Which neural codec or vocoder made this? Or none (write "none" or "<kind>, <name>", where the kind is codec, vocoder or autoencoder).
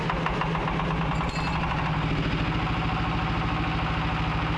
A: none